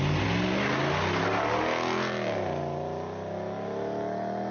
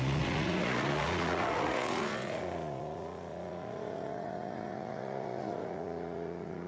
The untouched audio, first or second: first